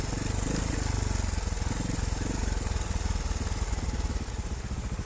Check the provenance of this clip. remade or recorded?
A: recorded